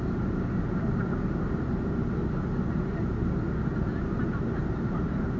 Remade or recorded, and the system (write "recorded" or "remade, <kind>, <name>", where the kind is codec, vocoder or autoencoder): recorded